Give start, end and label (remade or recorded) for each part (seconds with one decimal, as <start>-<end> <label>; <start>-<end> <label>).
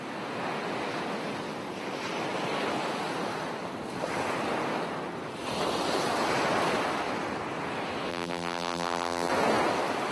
0.0-8.1 recorded; 8.1-9.3 remade; 9.3-10.1 recorded